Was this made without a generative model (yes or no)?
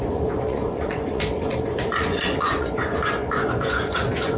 no